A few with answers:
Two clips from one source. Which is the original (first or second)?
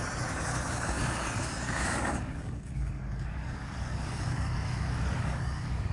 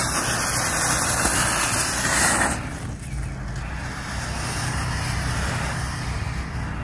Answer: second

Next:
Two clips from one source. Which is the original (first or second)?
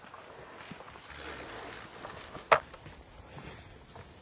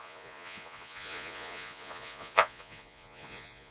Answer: first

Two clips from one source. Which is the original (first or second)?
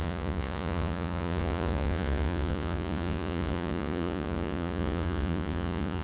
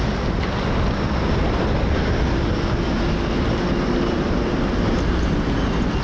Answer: second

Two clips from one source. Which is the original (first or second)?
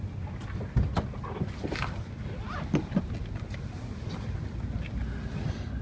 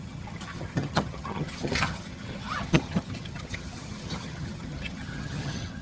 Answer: first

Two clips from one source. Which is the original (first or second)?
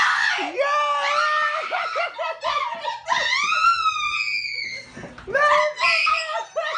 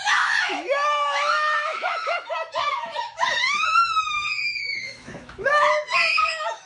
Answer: first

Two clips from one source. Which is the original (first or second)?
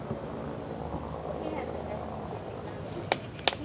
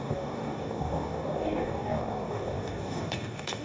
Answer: first